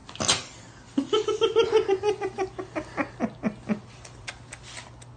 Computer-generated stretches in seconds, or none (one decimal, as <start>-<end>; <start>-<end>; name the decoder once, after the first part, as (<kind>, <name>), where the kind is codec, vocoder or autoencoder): none